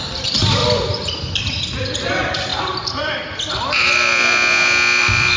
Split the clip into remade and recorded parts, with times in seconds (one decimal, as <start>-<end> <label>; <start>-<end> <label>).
0.0-0.6 remade; 0.6-1.4 recorded; 1.4-2.5 remade; 2.5-5.0 recorded; 5.0-5.4 remade